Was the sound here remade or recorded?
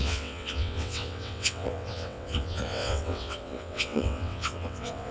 remade